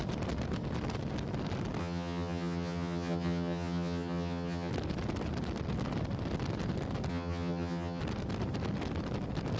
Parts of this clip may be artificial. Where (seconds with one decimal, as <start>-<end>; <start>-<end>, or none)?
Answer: 1.8-4.7; 7.1-8.0